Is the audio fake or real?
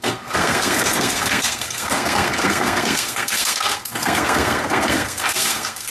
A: fake